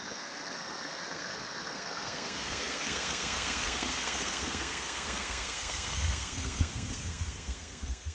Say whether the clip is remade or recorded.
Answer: remade